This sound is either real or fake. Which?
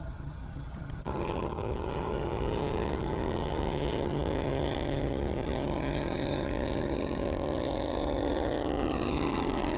fake